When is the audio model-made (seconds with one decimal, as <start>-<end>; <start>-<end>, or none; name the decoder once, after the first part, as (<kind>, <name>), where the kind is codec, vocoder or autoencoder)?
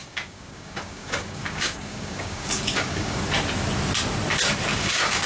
0.0-3.2 (codec, DAC); 4.7-5.3